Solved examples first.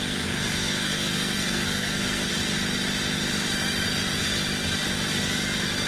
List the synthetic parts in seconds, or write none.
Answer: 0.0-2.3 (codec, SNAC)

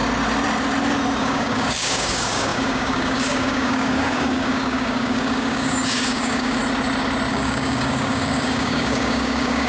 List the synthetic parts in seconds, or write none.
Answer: 1.2-6.6 (codec, DAC); 7.3-9.7

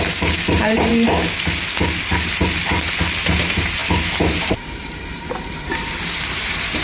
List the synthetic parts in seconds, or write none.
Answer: 0.0-0.9 (vocoder, BigVGAN v2); 3.2-6.8

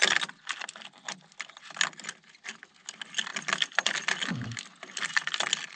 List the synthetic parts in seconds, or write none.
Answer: none

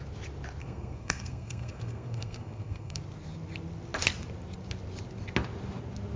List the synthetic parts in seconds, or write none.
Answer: 0.6-3.0 (codec, SNAC)